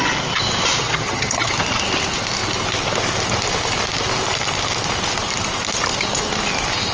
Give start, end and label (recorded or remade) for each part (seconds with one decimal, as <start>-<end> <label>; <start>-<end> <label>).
0.0-0.8 recorded; 0.8-1.5 remade; 1.5-6.9 recorded